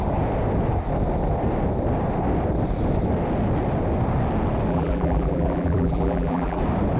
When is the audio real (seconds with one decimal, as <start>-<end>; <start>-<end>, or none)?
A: 0.0-4.7; 6.6-7.0